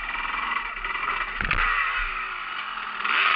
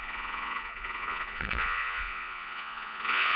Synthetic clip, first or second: second